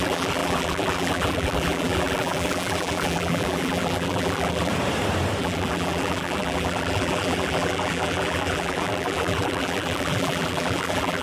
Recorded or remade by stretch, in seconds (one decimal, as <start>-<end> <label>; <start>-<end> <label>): 0.0-4.7 remade; 4.7-5.4 recorded; 5.4-11.2 remade